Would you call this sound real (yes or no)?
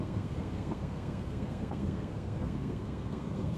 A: no